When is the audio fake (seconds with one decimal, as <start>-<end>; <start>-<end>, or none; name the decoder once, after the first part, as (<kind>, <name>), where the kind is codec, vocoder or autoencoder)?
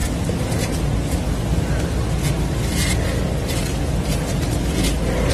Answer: none